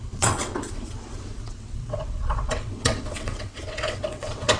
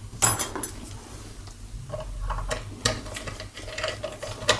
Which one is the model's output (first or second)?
first